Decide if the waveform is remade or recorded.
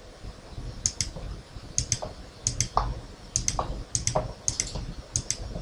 recorded